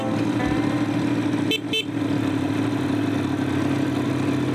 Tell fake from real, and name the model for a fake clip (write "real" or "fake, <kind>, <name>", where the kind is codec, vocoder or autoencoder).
real